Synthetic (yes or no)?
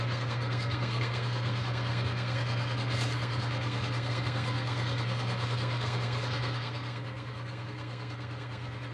yes